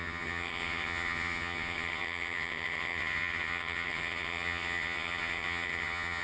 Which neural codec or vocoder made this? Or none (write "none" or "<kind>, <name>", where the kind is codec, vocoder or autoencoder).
vocoder, HiFi-GAN